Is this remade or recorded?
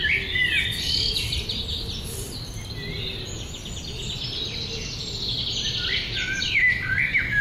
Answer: recorded